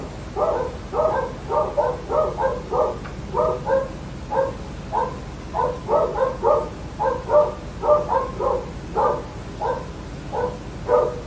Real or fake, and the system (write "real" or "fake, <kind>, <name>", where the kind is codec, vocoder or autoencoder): real